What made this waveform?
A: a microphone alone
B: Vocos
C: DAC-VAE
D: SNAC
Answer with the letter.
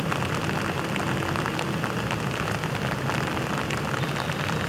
A